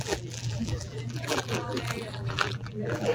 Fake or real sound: fake